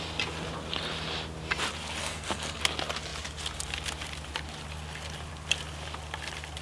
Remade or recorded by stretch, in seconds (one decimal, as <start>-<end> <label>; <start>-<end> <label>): 0.0-2.0 recorded; 2.0-2.6 remade; 2.6-6.6 recorded